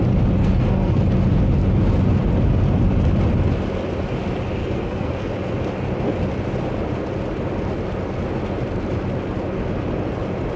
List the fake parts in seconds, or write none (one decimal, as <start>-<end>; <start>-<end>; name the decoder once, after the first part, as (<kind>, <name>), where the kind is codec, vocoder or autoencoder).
0.4-1.0 (codec, SNAC); 4.6-5.3